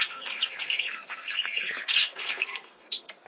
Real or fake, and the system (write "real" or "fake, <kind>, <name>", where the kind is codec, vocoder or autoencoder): fake, codec, SNAC